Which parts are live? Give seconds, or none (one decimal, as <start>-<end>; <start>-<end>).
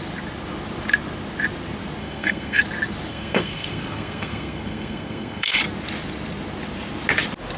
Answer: 0.0-2.0; 2.6-3.1; 5.6-7.6